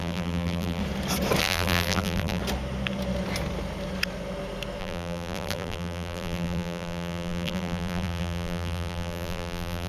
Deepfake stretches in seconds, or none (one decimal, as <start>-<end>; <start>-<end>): 0.0-0.8; 1.4-2.4; 4.8-9.9